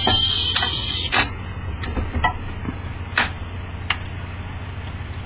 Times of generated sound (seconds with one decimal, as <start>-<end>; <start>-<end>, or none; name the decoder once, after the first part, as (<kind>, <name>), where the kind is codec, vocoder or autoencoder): 0.7-1.3 (vocoder, Vocos)